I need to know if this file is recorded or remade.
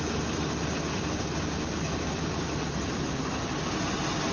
recorded